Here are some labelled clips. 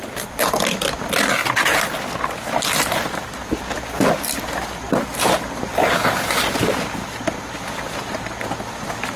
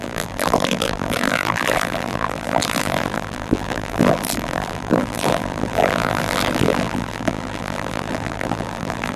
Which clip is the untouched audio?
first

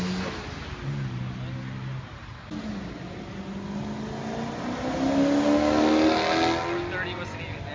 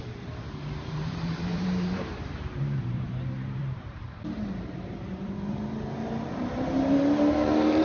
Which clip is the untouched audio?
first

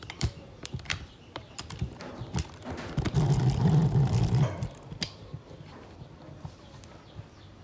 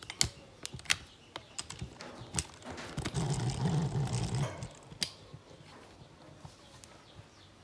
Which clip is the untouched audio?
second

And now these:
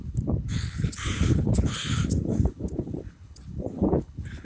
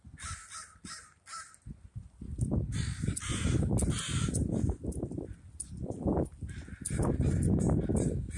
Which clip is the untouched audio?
second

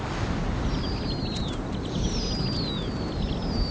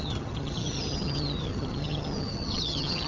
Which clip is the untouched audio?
first